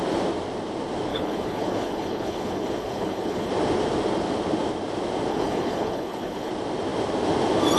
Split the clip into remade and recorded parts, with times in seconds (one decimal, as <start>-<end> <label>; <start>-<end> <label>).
0.0-1.1 recorded; 1.1-3.5 remade; 3.5-5.3 recorded; 5.3-6.5 remade; 6.5-7.8 recorded